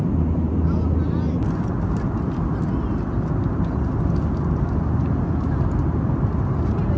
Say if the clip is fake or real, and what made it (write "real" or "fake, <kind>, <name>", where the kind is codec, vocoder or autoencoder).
real